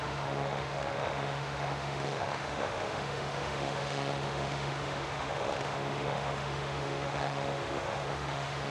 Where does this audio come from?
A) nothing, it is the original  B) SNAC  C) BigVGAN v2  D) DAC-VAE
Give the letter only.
D